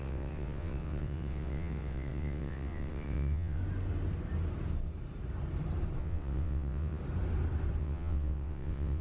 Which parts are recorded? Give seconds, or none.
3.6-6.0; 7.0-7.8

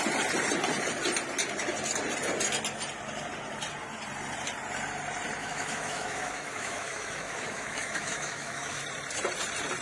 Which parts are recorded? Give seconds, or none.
0.0-5.4; 8.8-9.8

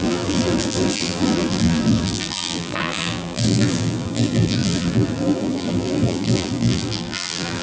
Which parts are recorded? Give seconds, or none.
none

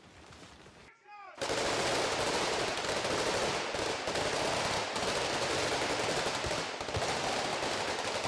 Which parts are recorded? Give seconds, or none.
0.0-8.3

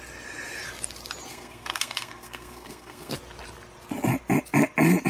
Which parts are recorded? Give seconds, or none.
0.0-1.3; 3.1-5.1

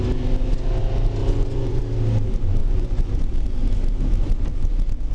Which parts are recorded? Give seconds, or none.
0.0-1.2; 1.8-2.6; 3.2-5.1

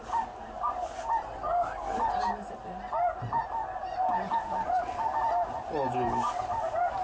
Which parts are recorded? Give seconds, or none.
0.0-7.0